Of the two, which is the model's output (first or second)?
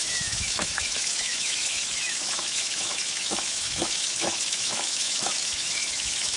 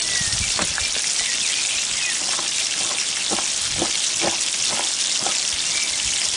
first